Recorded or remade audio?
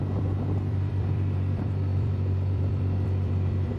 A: remade